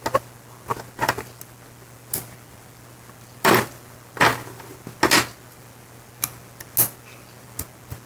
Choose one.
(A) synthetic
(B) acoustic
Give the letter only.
B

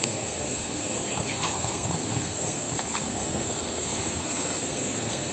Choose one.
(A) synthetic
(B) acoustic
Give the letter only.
A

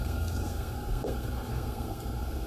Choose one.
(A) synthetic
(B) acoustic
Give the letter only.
A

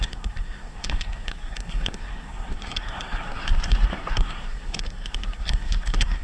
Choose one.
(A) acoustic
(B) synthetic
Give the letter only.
B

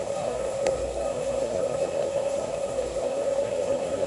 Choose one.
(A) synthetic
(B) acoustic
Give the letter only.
A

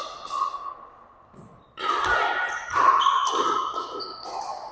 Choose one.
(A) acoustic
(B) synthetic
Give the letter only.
A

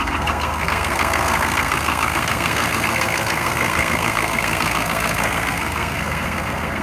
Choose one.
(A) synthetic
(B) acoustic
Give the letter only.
A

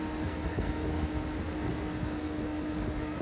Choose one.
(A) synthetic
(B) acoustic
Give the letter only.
A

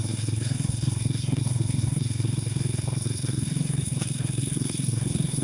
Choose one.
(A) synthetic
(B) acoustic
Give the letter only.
A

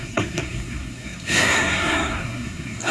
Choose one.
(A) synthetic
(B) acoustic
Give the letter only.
A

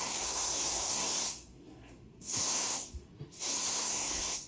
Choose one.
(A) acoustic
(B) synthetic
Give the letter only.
B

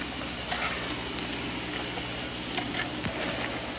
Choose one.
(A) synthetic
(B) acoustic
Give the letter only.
B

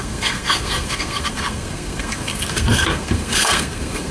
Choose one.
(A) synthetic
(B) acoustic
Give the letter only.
A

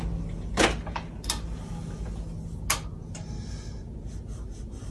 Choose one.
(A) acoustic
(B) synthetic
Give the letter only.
A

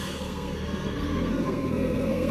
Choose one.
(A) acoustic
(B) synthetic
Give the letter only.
B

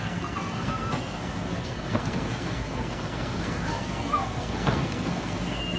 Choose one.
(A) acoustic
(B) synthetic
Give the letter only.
B